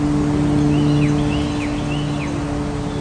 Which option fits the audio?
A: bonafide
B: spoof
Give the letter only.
A